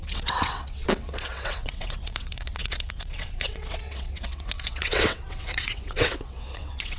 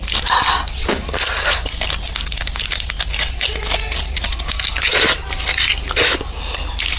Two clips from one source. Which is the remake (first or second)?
first